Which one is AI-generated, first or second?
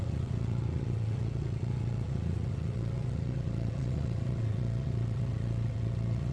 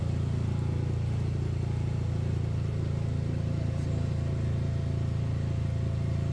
first